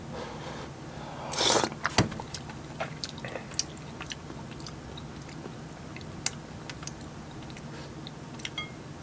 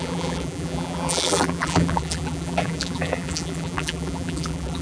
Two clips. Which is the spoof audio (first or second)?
second